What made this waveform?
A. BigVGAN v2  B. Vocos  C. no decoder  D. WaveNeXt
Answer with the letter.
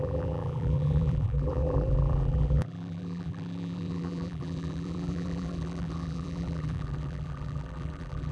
A